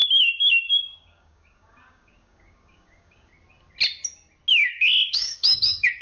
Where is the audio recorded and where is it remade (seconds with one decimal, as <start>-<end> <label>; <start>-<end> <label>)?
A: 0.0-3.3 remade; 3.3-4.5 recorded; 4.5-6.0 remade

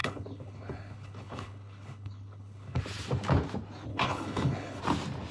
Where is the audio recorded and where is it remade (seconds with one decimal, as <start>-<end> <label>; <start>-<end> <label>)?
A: 0.0-2.8 remade; 2.8-3.9 recorded; 3.9-4.8 remade; 4.8-5.3 recorded

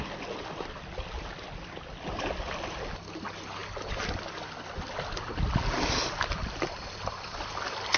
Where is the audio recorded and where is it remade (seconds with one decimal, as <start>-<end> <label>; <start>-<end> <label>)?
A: 0.0-8.0 recorded